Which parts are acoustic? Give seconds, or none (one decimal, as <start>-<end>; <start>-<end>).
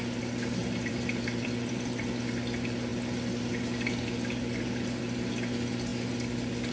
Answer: 0.0-0.6; 2.0-6.7